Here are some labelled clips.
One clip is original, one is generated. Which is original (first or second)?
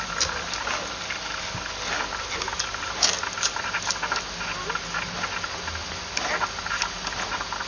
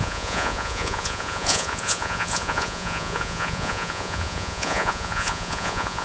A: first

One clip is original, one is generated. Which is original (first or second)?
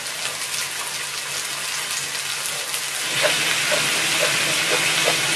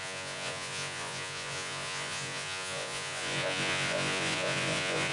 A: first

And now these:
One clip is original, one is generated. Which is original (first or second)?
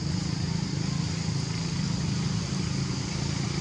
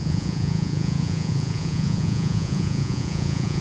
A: first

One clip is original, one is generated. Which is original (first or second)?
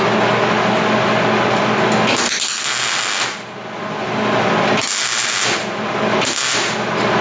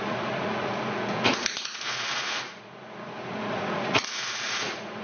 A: first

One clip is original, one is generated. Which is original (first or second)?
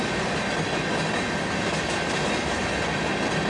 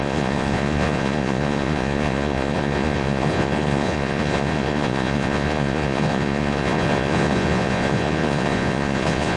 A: first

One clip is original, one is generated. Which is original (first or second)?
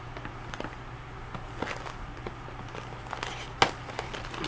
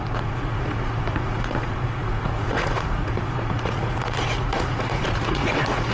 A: first